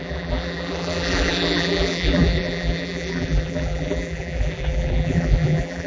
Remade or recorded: remade